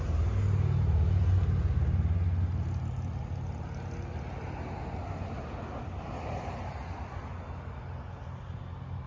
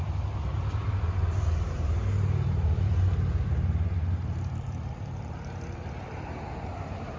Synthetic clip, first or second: second